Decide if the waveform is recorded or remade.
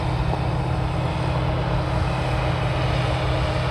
recorded